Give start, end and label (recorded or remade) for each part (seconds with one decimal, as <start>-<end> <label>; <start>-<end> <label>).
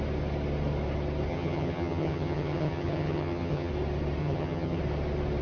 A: 0.0-1.3 recorded; 1.3-3.7 remade; 3.7-4.2 recorded; 4.2-4.8 remade; 4.8-5.4 recorded